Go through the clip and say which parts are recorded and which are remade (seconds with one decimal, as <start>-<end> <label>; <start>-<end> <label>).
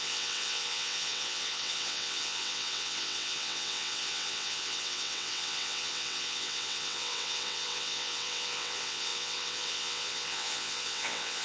0.0-11.4 remade